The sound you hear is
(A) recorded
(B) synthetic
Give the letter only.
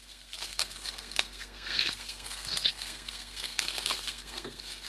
B